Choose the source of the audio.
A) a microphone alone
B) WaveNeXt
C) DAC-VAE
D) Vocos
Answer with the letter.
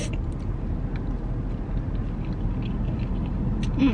A